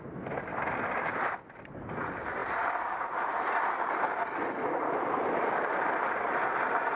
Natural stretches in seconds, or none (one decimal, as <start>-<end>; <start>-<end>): 0.0-7.0